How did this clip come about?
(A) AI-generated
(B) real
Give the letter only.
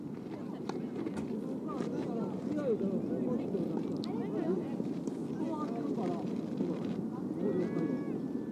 B